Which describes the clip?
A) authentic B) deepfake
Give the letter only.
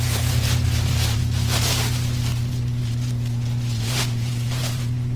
B